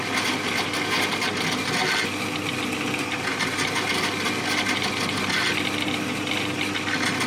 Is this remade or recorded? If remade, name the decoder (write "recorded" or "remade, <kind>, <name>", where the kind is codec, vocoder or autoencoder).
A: recorded